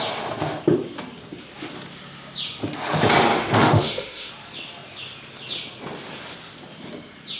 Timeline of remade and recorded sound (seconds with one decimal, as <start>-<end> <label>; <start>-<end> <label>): 0.0-3.3 recorded; 3.3-4.3 remade; 4.3-7.4 recorded